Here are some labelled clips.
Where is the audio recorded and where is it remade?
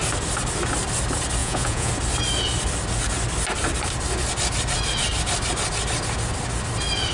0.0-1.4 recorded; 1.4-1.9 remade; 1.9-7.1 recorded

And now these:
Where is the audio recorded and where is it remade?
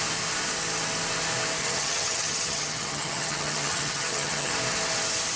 0.0-1.6 recorded; 1.6-4.5 remade; 4.5-5.4 recorded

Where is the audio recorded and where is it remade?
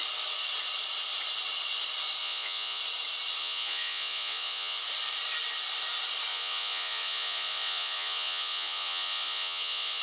0.0-2.2 recorded; 2.2-2.8 remade; 2.8-3.4 recorded; 3.4-4.8 remade; 4.8-6.3 recorded; 6.3-10.0 remade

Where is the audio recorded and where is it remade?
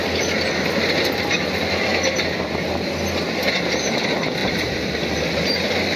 0.0-4.4 recorded; 4.4-4.9 remade; 4.9-6.0 recorded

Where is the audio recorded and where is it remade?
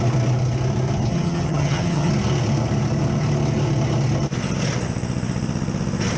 0.0-1.1 recorded; 1.1-2.1 remade; 2.1-6.2 recorded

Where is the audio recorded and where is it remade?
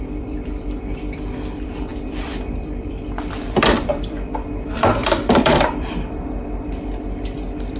0.0-7.8 remade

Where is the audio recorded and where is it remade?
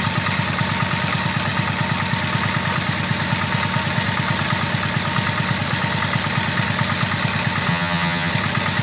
0.0-7.7 recorded; 7.7-8.3 remade; 8.3-8.8 recorded